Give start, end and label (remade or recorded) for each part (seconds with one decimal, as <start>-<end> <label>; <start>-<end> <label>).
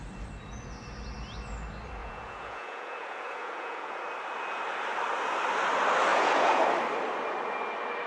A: 0.0-2.0 recorded; 2.0-4.0 remade; 4.0-6.1 recorded; 6.1-6.6 remade; 6.6-8.1 recorded